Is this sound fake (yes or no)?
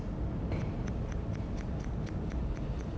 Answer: no